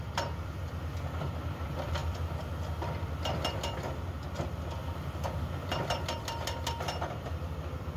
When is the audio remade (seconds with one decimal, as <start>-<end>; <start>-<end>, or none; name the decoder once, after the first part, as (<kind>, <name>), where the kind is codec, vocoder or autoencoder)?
0.0-8.0 (vocoder, BigVGAN v2)